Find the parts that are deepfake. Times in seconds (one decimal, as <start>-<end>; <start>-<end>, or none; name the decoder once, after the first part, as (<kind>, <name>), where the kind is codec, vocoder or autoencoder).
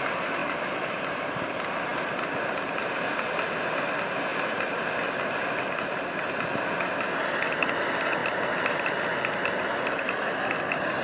0.4-1.4 (vocoder, BigVGAN v2); 4.3-5.2; 8.2-9.1